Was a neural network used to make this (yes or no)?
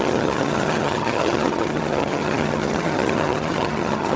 yes